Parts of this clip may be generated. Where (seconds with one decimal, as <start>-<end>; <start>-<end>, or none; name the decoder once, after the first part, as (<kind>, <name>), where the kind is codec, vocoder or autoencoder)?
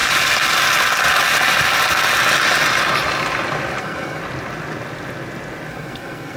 3.8-4.2 (codec, SNAC); 5.7-6.4